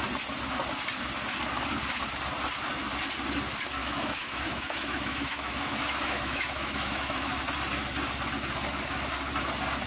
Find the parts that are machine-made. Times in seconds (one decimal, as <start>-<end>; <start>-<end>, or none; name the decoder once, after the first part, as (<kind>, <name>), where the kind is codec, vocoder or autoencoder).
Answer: 3.8-7.3 (autoencoder, DAC-VAE)